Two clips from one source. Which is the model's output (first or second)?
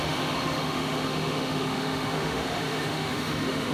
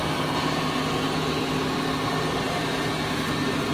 first